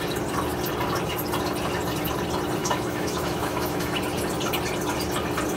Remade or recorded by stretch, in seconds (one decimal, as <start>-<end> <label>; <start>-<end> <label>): 0.0-2.6 recorded; 2.6-4.0 remade; 4.0-5.6 recorded